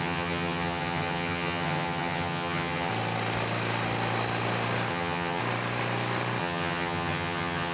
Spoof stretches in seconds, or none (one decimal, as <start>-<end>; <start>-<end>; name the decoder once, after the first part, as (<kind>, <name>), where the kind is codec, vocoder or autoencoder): 0.0-2.9 (vocoder, HiFi-GAN); 4.9-5.4; 6.4-7.7